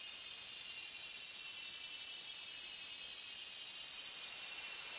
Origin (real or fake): real